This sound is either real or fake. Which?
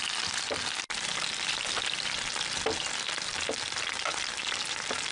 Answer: real